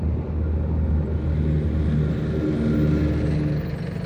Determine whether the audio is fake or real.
real